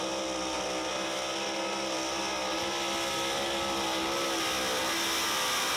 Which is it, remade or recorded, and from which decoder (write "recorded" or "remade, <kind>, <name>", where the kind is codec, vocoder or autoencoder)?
recorded